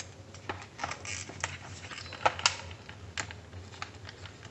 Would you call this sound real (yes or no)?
yes